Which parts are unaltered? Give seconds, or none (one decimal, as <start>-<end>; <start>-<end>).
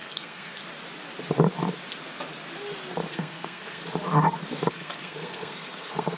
0.6-3.1; 3.8-4.7